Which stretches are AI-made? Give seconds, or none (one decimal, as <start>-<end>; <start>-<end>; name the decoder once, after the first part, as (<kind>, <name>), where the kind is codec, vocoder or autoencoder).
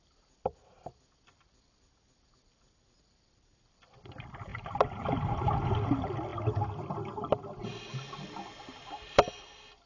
none